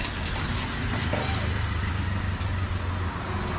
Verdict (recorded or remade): recorded